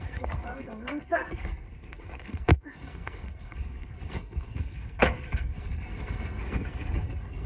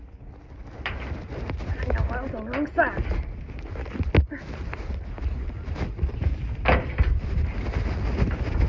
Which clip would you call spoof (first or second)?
first